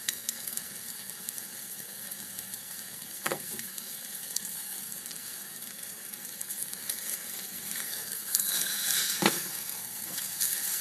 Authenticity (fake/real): fake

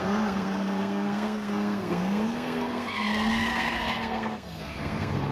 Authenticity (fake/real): fake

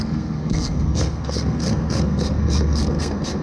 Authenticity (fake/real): fake